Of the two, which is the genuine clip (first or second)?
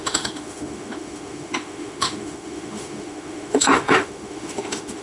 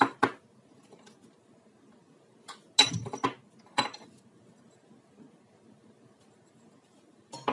second